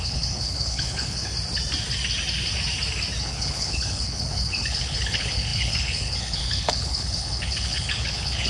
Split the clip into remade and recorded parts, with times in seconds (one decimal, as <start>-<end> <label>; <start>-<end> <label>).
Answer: 0.0-1.3 remade; 1.3-3.2 recorded; 3.2-8.5 remade